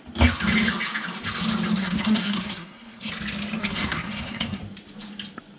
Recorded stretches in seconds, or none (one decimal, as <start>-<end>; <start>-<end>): 0.0-1.8; 3.1-3.6; 4.6-5.6

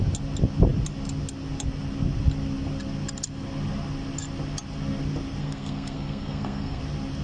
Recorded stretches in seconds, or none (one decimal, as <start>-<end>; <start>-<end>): 0.0-5.4; 6.8-7.2

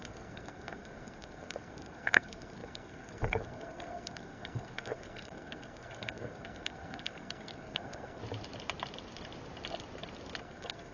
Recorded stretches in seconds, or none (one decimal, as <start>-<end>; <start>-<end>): 8.2-10.4

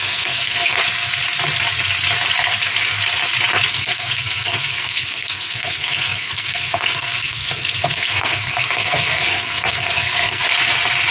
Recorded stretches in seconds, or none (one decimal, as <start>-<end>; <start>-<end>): 0.8-3.7; 10.4-11.1

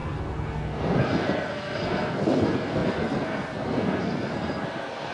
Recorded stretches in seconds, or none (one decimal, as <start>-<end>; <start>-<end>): none

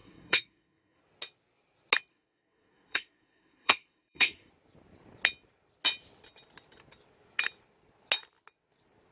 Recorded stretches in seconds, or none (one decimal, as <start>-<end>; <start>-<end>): 1.0-2.1; 4.5-9.1

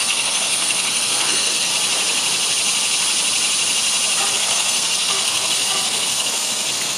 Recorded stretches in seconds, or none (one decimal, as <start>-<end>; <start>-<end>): 1.7-4.3